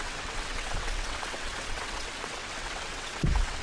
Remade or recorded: remade